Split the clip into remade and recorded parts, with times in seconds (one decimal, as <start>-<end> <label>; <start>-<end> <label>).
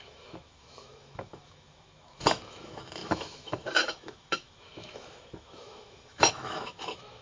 0.0-7.2 remade